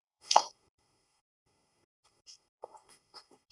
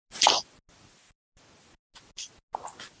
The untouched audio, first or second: second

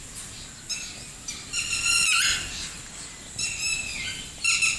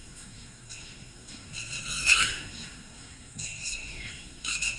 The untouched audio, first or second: first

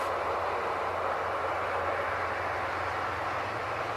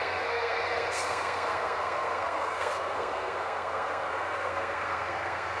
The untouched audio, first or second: first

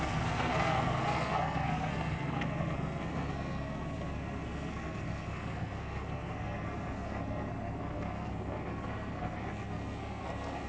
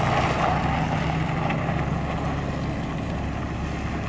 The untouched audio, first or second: second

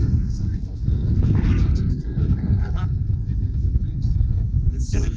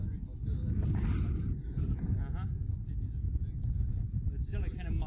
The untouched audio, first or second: second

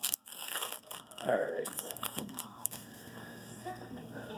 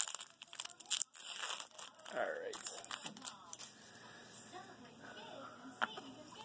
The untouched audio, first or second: second